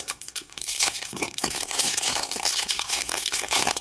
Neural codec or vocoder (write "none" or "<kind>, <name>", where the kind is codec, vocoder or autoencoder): codec, SNAC